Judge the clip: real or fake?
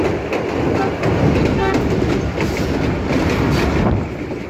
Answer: real